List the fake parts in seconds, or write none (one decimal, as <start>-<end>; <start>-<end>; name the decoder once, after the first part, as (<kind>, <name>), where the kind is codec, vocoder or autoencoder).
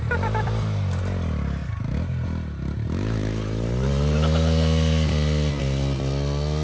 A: none